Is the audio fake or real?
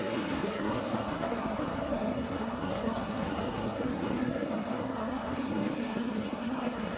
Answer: fake